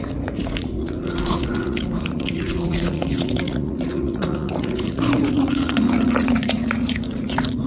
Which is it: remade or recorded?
remade